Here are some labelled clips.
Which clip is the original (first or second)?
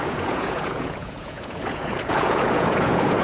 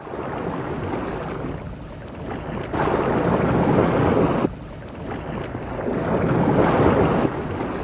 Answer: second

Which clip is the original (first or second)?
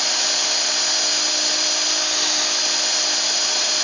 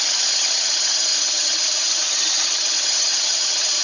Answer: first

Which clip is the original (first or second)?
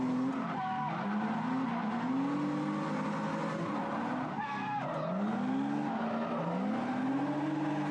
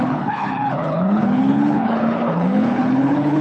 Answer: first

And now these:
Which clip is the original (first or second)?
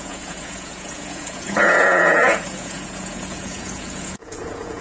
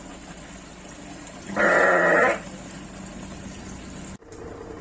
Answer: second